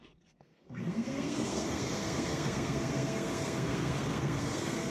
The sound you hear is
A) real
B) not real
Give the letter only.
B